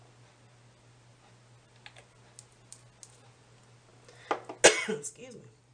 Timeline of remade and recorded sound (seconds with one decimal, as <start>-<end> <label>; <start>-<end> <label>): 0.0-5.7 recorded